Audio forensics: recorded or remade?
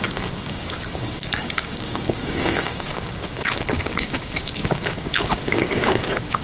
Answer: remade